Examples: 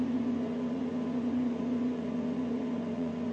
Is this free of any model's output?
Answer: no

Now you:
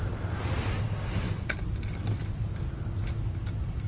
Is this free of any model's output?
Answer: yes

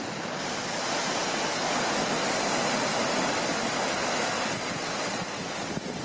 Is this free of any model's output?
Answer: yes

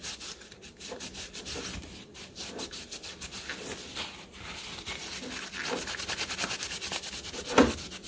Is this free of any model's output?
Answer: yes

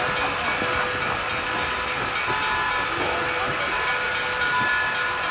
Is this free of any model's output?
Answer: yes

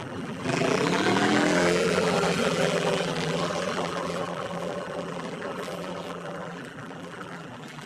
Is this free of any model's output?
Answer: no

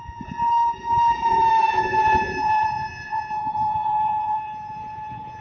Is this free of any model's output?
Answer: no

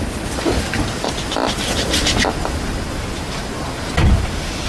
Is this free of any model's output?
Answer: yes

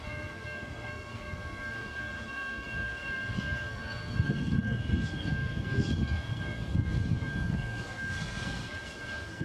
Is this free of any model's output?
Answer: no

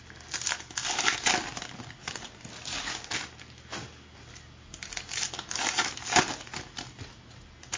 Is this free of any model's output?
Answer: yes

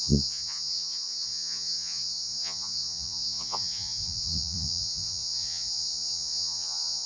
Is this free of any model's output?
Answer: no